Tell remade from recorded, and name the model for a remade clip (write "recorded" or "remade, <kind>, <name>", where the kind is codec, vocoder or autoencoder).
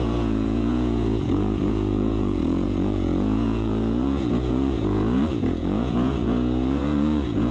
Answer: remade, vocoder, Vocos